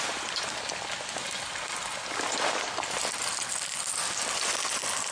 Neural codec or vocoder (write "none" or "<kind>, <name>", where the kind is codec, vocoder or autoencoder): none